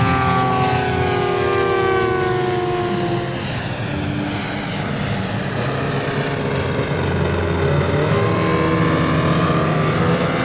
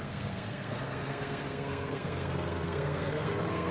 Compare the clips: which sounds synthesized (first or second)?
second